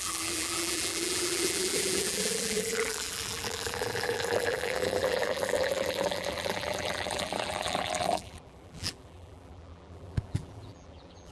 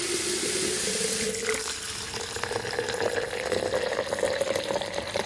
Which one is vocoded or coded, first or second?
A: first